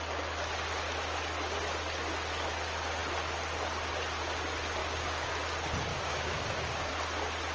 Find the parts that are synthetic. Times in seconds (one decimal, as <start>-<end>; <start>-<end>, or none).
4.8-5.3; 5.9-6.9